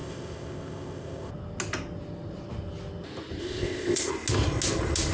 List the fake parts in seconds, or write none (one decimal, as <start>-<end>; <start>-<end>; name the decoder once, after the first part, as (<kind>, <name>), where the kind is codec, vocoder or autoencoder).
0.0-1.3 (codec, ZipCodec); 3.4-4.1